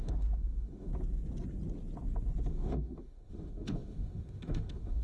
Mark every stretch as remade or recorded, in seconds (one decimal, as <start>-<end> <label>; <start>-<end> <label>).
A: 0.0-0.9 remade; 0.9-2.5 recorded; 2.5-5.0 remade